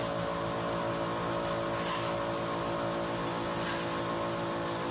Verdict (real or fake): real